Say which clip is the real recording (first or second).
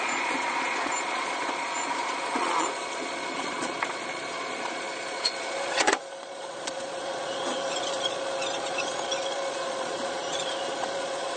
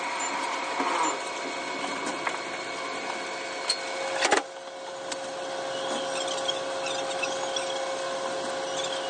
second